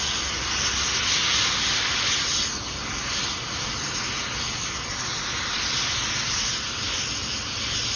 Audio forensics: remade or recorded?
recorded